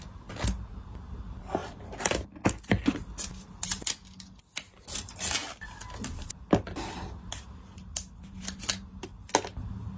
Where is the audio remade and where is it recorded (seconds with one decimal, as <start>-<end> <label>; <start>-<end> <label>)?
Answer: 0.0-1.6 recorded; 1.6-3.3 remade; 3.3-10.0 recorded